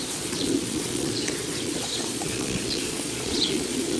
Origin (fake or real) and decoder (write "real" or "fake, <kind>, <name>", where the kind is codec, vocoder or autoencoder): fake, vocoder, Vocos